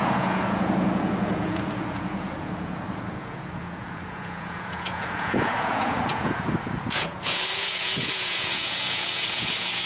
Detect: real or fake fake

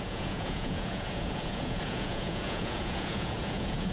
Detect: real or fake fake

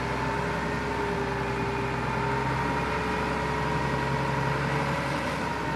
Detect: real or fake real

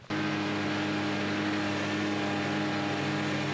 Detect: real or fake real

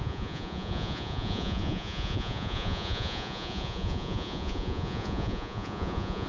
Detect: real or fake fake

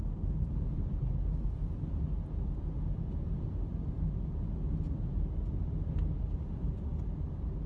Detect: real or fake real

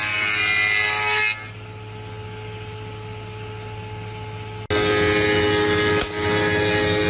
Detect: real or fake real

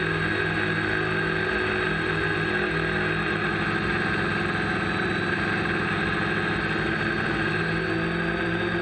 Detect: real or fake real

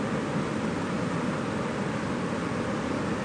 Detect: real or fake real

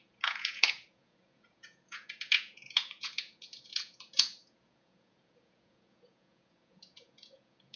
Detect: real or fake fake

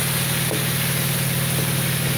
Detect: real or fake real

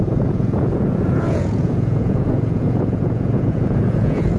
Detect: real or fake fake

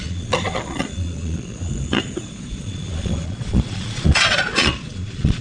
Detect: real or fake fake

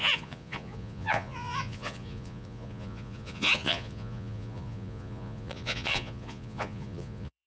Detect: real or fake fake